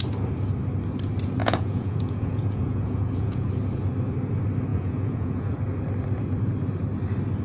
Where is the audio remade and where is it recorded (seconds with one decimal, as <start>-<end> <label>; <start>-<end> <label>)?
0.0-1.4 recorded; 1.4-3.5 remade; 3.5-4.7 recorded; 4.7-5.5 remade; 5.5-7.4 recorded